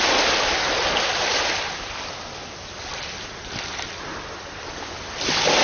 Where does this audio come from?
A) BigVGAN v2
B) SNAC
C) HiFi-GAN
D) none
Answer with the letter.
D